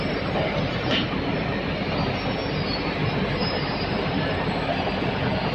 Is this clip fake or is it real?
real